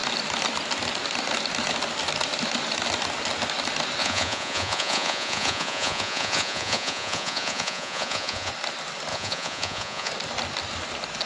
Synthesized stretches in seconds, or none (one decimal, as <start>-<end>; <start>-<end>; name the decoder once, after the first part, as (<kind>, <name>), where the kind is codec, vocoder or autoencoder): 4.0-8.5 (vocoder, Vocos); 9.1-10.1